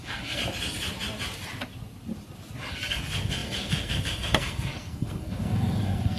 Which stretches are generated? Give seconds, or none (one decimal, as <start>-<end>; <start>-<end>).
0.0-0.4; 2.7-6.2